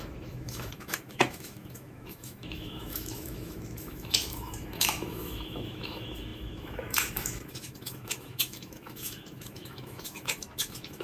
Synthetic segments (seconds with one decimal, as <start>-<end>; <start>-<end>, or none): 0.0-11.0